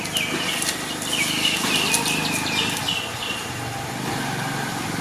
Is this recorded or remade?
recorded